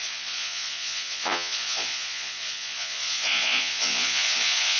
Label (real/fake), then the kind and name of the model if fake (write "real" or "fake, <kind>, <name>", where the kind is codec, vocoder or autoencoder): fake, vocoder, Vocos